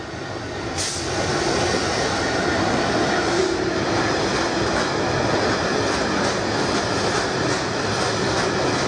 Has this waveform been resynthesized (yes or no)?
no